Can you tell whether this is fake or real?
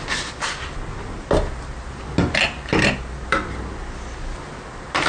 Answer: real